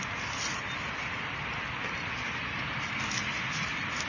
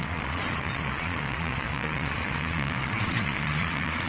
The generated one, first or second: second